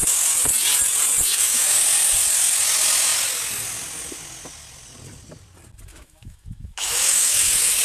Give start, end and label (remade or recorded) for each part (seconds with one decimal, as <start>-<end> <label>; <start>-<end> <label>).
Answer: 0.0-1.3 recorded; 1.3-1.8 remade; 1.8-5.9 recorded; 5.9-7.8 remade